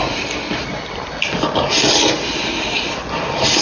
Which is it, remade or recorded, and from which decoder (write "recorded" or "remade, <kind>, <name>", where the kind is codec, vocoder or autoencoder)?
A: recorded